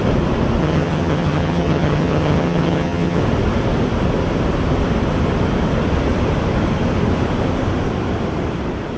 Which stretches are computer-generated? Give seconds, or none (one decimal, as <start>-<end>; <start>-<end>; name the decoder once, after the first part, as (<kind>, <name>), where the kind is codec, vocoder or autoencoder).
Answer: 0.6-3.2 (vocoder, HiFi-GAN)